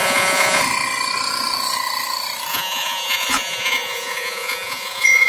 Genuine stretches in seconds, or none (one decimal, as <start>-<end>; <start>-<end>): 0.6-2.5